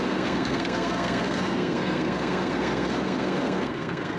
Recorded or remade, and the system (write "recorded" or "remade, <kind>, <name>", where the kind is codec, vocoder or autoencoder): remade, codec, SNAC